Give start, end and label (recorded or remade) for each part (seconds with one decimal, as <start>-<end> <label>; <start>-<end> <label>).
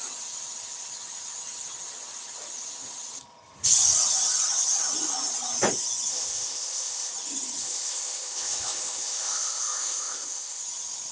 0.0-6.1 recorded; 6.1-7.1 remade; 7.1-7.6 recorded; 7.6-10.6 remade; 10.6-11.1 recorded